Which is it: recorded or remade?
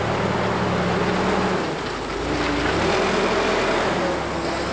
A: recorded